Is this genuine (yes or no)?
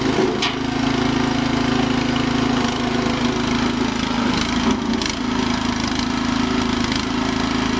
yes